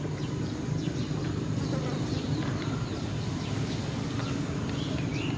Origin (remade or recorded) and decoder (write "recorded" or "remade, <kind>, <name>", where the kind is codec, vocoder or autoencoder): recorded